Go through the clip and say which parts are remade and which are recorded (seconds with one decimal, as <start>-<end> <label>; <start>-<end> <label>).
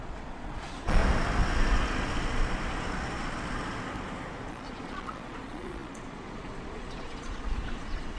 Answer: 0.0-1.0 remade; 1.0-4.5 recorded; 4.5-8.2 remade